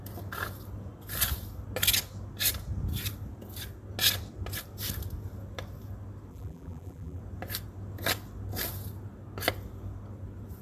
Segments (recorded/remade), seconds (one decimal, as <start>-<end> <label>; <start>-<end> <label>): 0.0-6.3 recorded; 6.3-7.2 remade; 7.2-10.6 recorded